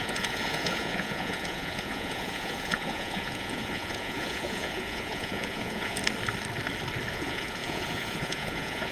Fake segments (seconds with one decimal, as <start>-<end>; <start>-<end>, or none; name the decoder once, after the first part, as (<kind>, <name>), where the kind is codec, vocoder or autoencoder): 0.0-6.0 (vocoder, Vocos); 7.1-8.9